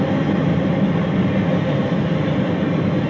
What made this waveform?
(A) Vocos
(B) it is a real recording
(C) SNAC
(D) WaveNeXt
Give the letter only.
B